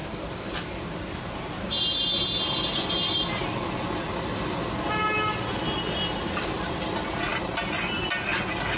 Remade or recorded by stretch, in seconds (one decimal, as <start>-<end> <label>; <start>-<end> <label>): 0.0-8.8 recorded